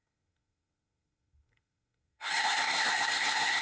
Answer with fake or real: fake